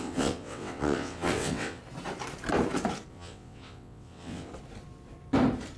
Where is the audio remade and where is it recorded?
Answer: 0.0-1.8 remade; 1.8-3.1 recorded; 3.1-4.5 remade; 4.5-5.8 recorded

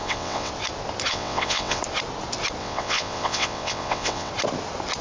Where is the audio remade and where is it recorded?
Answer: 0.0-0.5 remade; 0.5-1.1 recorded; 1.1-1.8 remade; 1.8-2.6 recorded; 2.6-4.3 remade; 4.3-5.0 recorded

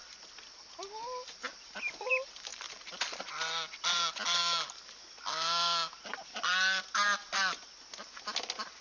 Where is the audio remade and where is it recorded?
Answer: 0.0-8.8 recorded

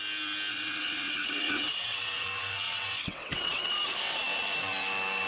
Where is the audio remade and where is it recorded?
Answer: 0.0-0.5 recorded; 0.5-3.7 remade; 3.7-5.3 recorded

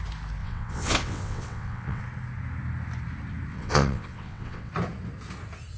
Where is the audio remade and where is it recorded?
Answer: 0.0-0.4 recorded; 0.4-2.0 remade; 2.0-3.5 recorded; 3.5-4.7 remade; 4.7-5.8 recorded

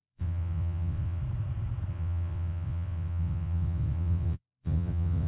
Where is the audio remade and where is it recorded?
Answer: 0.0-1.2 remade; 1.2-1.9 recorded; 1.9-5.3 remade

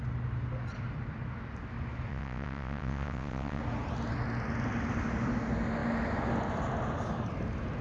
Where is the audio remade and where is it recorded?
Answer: 0.0-2.1 recorded; 2.1-3.6 remade; 3.6-7.8 recorded